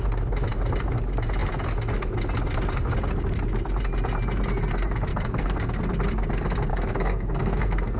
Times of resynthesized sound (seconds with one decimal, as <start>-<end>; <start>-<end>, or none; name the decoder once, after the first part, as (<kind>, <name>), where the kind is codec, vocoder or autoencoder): 5.1-5.8 (codec, SNAC); 6.7-8.0